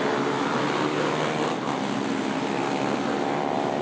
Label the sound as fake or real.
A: real